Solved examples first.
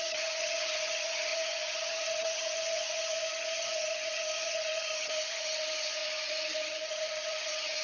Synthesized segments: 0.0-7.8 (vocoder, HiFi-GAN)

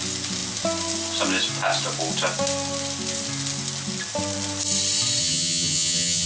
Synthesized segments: 5.2-6.3 (vocoder, HiFi-GAN)

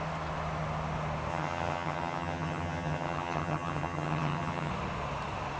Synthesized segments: 1.3-4.7 (vocoder, HiFi-GAN)

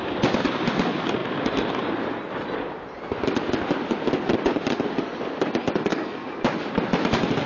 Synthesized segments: none

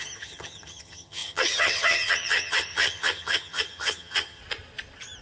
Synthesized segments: 0.0-4.4 (vocoder, HiFi-GAN)